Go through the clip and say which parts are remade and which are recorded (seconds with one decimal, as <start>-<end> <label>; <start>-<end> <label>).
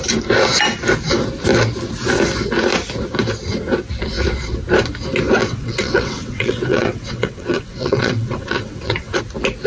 0.0-5.4 recorded; 5.4-9.2 remade; 9.2-9.7 recorded